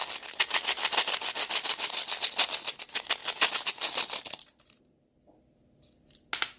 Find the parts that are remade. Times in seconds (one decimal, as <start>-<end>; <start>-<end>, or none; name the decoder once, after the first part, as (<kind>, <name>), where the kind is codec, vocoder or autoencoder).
none